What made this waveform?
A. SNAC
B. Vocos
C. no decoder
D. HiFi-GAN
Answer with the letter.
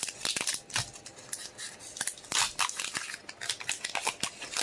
C